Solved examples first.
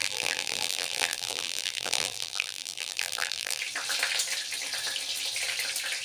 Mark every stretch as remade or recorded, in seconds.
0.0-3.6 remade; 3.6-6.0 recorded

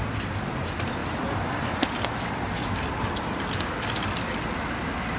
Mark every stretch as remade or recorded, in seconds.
0.0-5.2 recorded

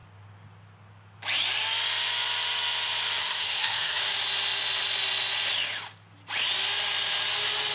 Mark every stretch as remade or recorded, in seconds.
0.0-3.2 recorded; 3.2-4.0 remade; 4.0-7.7 recorded

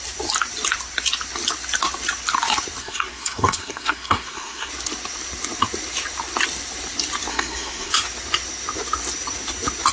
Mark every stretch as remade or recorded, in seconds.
0.0-2.8 recorded; 2.8-4.7 remade; 4.7-7.3 recorded; 7.3-7.9 remade; 7.9-9.9 recorded

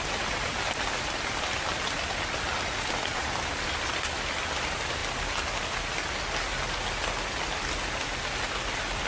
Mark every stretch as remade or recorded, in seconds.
0.0-9.1 recorded

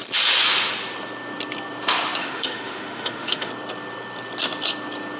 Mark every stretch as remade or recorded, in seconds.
0.0-2.2 recorded; 2.2-3.5 remade; 3.5-5.2 recorded

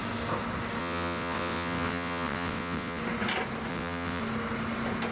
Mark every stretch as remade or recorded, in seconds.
0.0-0.8 recorded; 0.8-3.0 remade; 3.0-3.7 recorded; 3.7-4.2 remade; 4.2-5.1 recorded